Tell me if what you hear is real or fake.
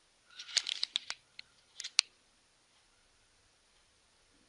real